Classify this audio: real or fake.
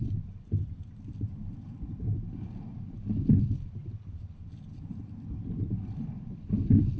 fake